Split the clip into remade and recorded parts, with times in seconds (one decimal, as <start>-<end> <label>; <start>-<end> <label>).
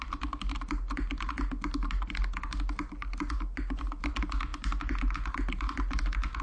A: 0.0-6.4 recorded